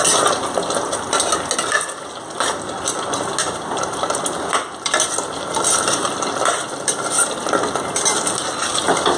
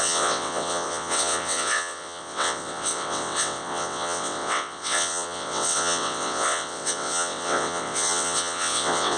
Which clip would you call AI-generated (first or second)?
second